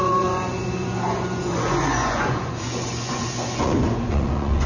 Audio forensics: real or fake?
fake